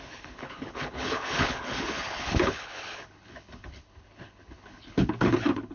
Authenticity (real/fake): fake